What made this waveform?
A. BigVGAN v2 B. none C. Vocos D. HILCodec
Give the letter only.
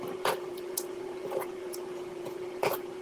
C